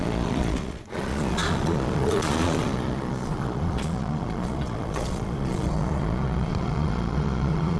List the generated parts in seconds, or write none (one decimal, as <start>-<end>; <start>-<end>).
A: 0.0-7.8